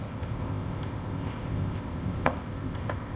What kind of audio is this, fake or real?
fake